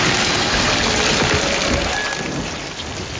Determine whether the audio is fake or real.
real